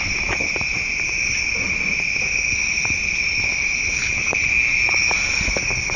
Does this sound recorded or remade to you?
recorded